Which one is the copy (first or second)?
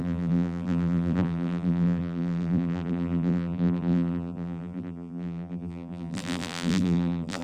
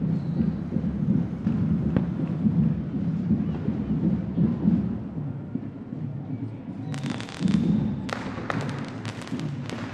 first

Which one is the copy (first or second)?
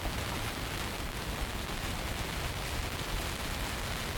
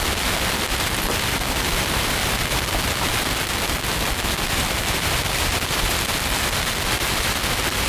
second